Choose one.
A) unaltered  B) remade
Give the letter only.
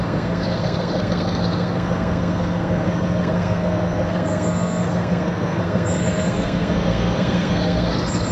B